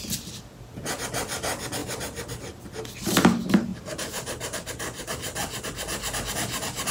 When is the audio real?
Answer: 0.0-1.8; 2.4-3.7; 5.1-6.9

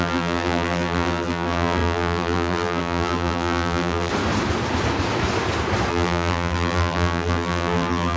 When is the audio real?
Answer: 4.1-5.9

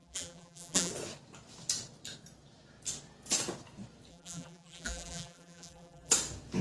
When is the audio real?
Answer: 0.9-4.1; 6.1-6.6

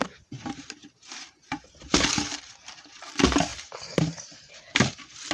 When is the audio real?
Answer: none